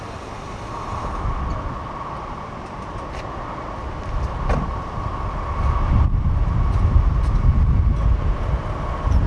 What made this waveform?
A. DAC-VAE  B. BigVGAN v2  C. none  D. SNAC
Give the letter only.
C